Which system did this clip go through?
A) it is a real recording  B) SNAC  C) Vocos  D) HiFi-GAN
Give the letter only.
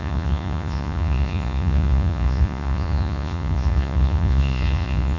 C